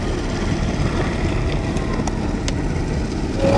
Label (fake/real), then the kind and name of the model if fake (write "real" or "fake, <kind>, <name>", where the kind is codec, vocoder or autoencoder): real